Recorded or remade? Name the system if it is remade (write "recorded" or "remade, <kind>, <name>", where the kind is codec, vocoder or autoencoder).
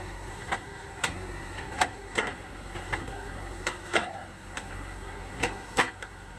remade, codec, SNAC